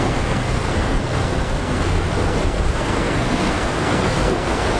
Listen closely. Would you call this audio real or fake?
fake